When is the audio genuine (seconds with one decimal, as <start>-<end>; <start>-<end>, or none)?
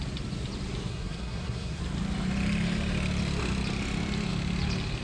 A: 0.0-0.9; 1.8-5.0